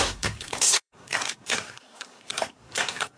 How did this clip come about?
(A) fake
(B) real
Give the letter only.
A